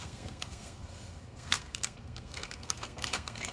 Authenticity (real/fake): fake